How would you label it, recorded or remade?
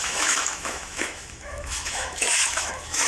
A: remade